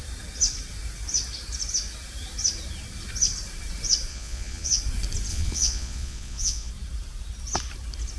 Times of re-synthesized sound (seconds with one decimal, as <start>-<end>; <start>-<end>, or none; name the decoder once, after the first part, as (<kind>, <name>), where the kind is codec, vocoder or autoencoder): 4.1-4.8 (vocoder, Vocos); 5.3-6.7